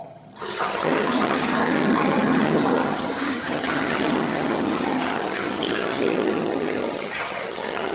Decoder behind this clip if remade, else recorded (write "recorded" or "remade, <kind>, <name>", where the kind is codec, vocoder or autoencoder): remade, vocoder, HiFi-GAN